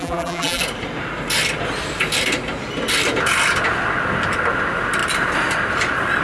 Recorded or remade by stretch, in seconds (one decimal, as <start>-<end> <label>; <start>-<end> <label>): 0.0-0.6 remade; 0.6-6.2 recorded